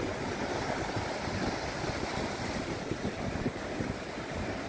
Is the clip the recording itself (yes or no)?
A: yes